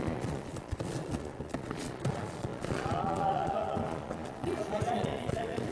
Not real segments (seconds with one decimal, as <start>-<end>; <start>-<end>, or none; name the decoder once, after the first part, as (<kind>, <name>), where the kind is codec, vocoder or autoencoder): 0.0-5.7 (vocoder, Vocos)